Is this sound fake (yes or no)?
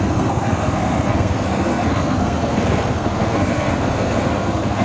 yes